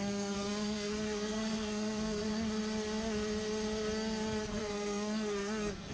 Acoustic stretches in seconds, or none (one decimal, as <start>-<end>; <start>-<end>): 2.3-4.5